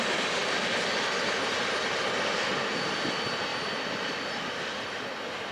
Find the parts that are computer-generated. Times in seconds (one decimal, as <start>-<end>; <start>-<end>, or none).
3.5-4.1; 4.7-5.5